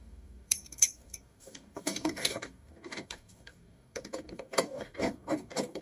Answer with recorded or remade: remade